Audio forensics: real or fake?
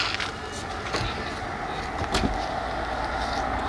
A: real